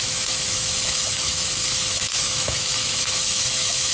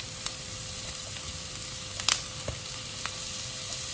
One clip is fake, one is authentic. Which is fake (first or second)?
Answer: first